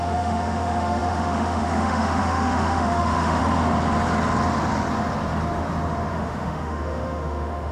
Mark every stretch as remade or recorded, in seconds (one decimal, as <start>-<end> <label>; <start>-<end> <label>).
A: 0.0-3.4 remade; 3.4-6.1 recorded; 6.1-7.7 remade